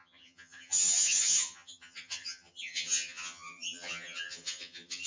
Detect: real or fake fake